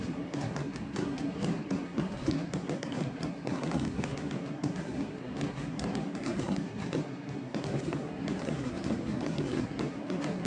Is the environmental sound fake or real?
fake